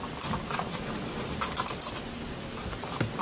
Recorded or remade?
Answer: recorded